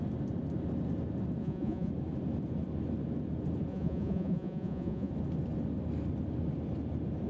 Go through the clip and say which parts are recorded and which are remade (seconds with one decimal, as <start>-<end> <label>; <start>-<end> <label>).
0.0-1.4 recorded; 1.4-1.9 remade; 1.9-3.7 recorded; 3.7-5.1 remade; 5.1-7.3 recorded